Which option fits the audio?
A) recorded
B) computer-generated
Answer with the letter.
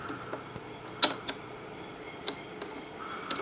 A